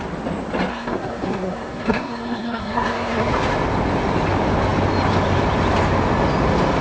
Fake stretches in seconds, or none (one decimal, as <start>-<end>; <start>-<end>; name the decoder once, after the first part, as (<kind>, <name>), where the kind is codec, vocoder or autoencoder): 0.7-3.3 (codec, SNAC)

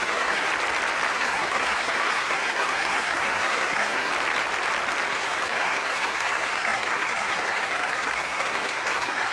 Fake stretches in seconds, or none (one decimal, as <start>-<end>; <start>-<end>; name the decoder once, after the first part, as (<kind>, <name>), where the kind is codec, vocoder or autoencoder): 0.0-0.5 (codec, SNAC); 1.1-4.1; 5.1-9.3